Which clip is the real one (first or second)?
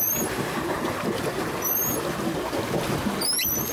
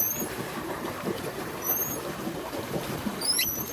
first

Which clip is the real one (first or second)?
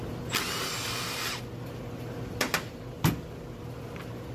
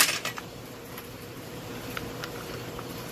first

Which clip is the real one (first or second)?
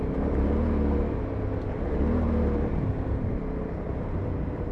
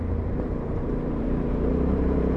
first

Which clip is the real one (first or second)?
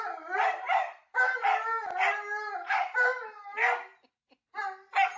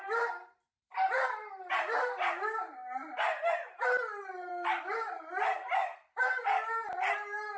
first